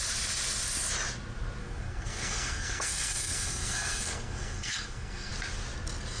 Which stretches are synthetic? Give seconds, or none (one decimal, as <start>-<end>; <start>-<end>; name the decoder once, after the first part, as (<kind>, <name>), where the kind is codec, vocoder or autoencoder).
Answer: 1.6-5.3 (codec, SNAC)